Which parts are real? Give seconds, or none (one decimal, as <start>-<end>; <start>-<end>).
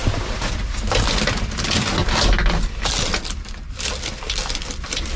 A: 0.0-5.2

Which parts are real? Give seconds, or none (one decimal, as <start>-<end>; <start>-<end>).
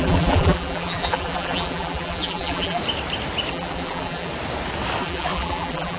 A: 2.8-3.5; 4.3-5.0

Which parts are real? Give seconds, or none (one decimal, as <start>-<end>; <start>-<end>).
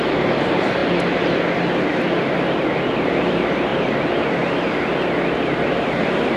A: 0.8-2.7; 3.7-5.4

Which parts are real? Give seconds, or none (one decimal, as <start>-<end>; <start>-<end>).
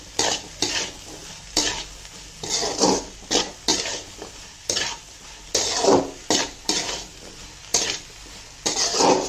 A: 0.0-1.2; 2.1-3.7; 5.3-9.3